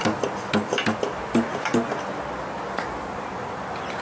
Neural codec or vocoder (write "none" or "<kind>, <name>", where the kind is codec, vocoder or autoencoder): none